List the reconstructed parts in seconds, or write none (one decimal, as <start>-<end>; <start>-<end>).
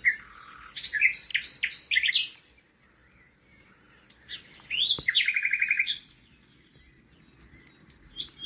none